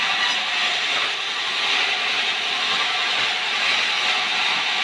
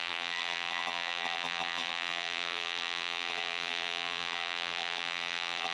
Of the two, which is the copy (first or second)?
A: second